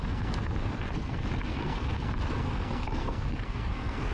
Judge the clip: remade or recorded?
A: remade